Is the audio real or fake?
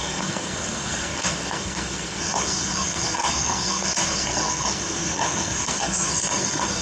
fake